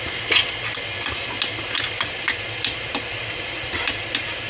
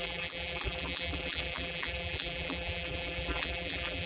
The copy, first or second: second